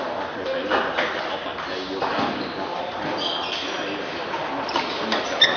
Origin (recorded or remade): recorded